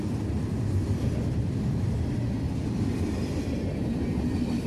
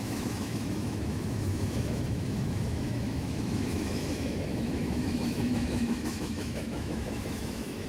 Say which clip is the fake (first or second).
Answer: second